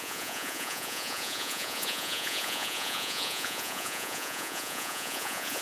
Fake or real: fake